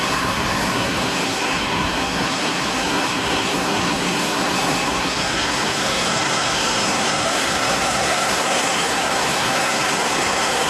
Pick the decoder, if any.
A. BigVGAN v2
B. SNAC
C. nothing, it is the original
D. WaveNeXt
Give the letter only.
B